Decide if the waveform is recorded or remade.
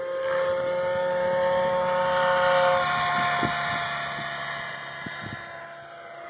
recorded